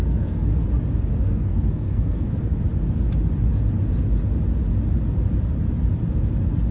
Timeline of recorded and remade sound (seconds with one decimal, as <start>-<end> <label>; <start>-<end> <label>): 0.0-0.5 remade; 0.5-1.2 recorded; 1.2-2.5 remade; 2.5-6.7 recorded